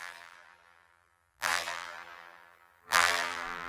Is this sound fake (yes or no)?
yes